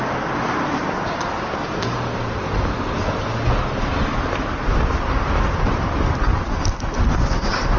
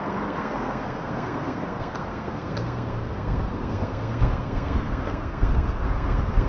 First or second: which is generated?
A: second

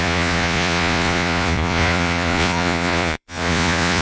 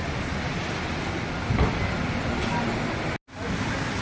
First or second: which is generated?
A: first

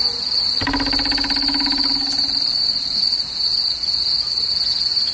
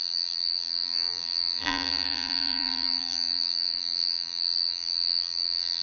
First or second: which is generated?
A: second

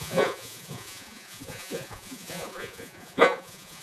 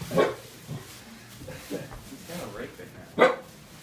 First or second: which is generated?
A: first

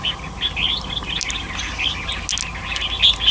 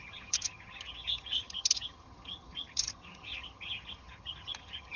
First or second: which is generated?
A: second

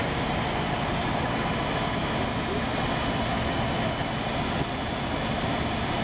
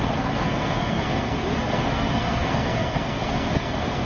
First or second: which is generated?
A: second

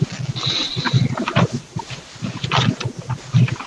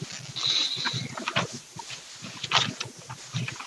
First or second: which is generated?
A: first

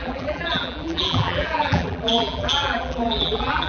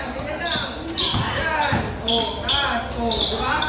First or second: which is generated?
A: first